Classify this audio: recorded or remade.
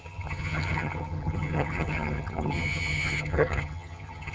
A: remade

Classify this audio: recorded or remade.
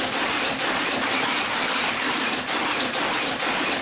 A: remade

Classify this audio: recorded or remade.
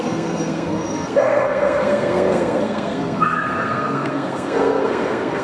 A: remade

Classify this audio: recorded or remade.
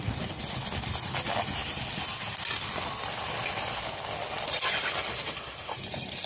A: recorded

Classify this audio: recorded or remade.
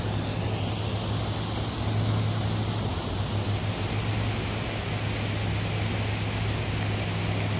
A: recorded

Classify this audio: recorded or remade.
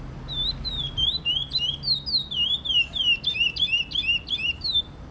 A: recorded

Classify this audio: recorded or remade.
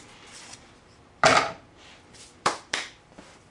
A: remade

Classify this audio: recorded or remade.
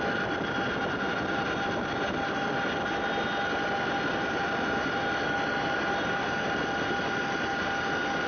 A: recorded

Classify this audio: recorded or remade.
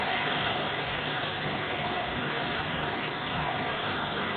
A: remade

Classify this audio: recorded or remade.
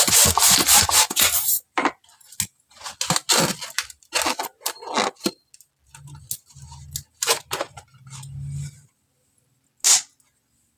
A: recorded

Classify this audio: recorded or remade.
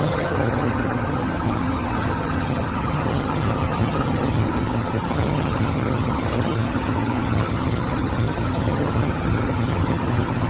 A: remade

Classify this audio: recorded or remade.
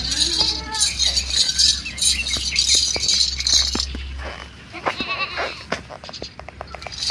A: recorded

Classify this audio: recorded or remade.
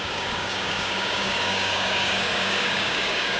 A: remade